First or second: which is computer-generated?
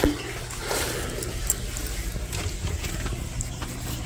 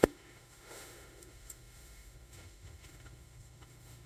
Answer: second